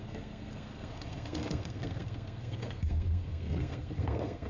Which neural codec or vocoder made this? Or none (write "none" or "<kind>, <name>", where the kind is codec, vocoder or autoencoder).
codec, SNAC